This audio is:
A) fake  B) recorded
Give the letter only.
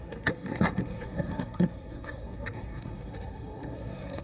A